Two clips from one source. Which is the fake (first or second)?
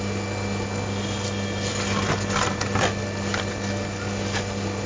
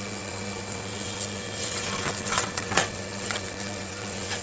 second